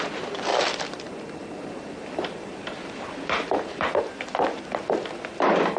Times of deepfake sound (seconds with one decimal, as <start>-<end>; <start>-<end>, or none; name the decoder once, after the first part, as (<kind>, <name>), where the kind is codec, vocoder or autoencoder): 0.5-4.0 (vocoder, BigVGAN v2)